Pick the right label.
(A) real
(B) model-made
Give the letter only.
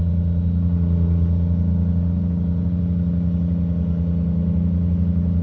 A